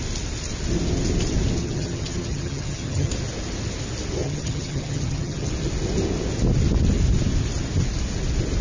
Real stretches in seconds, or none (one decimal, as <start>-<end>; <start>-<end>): 0.0-1.6; 3.1-4.2; 5.5-8.6

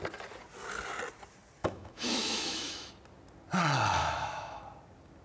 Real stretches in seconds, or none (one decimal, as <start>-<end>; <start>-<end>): 0.0-1.6; 2.9-4.0; 4.6-5.2

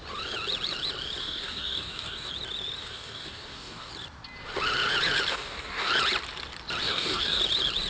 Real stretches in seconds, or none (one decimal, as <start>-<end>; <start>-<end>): 0.0-1.2; 2.3-2.8; 3.9-5.3; 5.9-6.8; 7.4-7.9